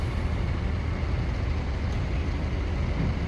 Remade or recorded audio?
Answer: recorded